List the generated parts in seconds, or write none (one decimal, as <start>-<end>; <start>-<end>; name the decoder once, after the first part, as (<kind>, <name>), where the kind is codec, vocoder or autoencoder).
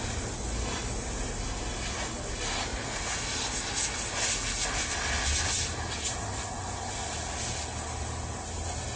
2.7-3.2 (vocoder, Vocos)